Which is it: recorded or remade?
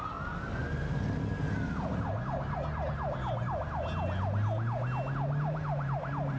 recorded